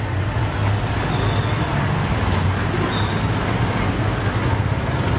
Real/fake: real